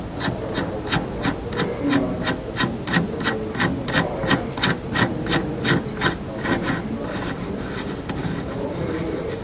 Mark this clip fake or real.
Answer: real